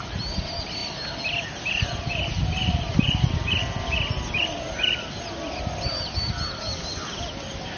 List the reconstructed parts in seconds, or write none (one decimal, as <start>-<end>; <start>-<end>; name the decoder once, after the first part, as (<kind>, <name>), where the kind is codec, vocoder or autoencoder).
none